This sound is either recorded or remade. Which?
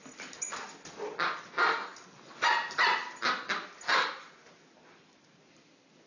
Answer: recorded